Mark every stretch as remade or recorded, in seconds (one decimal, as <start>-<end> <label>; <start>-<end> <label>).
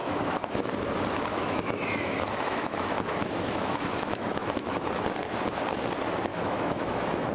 0.0-0.7 remade; 0.7-1.3 recorded; 1.3-4.9 remade; 4.9-6.3 recorded; 6.3-7.3 remade